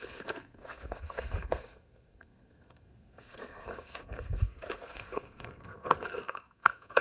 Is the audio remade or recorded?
remade